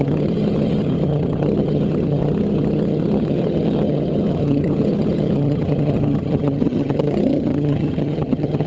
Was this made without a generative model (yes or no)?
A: no